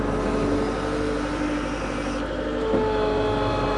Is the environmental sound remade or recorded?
recorded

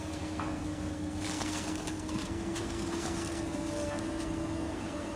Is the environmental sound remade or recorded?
remade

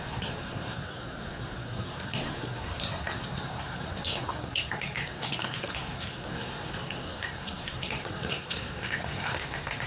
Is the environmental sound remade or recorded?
remade